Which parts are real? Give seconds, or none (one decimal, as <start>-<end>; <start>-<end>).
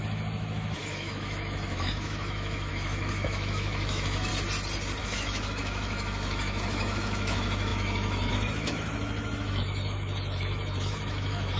4.3-5.0